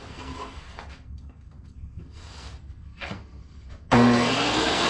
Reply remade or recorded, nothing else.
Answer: remade